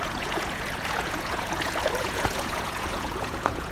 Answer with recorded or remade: remade